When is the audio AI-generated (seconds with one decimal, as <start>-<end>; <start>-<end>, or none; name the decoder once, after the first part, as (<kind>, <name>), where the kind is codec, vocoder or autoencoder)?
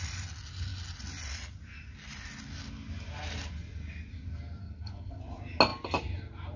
4.6-5.2 (codec, SNAC)